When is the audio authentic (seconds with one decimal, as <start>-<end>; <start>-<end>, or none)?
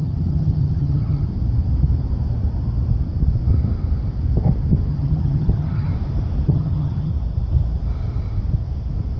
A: 1.3-4.9; 5.9-6.5; 7.1-9.2